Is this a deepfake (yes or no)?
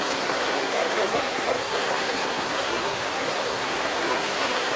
yes